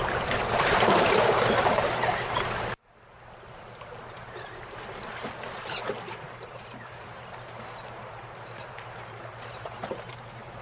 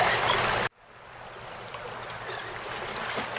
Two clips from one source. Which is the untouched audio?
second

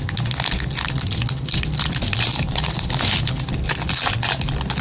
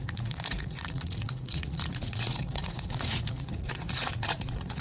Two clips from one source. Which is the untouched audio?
first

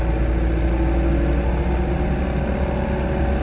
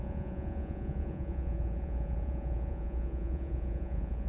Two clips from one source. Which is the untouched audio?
first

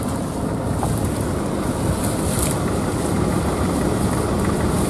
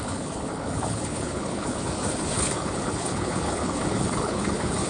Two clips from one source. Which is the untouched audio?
first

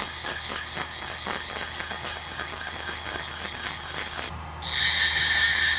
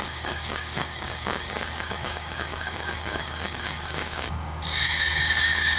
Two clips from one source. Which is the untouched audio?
first